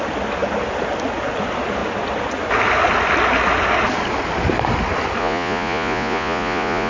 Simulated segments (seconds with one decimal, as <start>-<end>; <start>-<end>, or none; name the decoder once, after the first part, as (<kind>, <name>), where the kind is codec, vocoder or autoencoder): 5.2-6.9 (vocoder, Vocos)